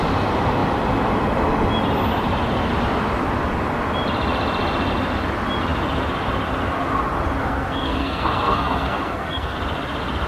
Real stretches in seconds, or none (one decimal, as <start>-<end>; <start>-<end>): 0.0-7.4; 9.6-10.3